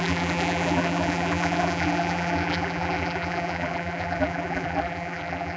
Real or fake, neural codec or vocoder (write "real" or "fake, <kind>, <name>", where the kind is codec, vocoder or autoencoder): fake, vocoder, BigVGAN v2